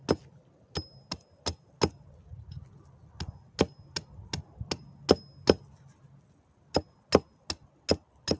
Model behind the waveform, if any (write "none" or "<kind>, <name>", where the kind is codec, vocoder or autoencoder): none